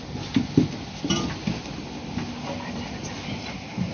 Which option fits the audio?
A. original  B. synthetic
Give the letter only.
A